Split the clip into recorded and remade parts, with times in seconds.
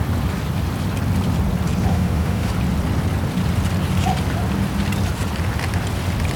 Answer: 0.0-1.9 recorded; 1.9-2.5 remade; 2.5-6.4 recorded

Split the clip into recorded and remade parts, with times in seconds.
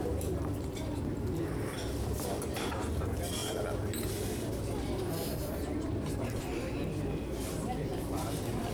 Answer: 0.0-8.7 remade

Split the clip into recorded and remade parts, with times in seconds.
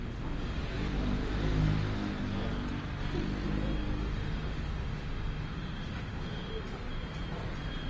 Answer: 0.0-0.6 remade; 0.6-4.0 recorded; 4.0-6.5 remade; 6.5-7.9 recorded